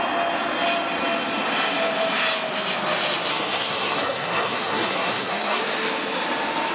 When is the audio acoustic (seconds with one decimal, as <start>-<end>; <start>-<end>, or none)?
0.0-3.3; 5.6-6.7